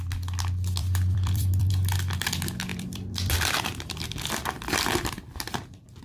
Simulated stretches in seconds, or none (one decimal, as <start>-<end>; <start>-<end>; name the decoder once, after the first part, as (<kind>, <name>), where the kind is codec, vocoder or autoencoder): 0.8-1.7 (vocoder, BigVGAN v2); 2.7-6.0